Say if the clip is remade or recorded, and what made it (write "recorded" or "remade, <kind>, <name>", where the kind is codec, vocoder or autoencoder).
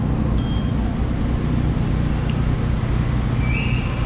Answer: recorded